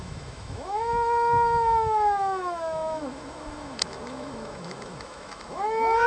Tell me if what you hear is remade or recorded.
remade